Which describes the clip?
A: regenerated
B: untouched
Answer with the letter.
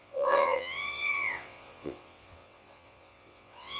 A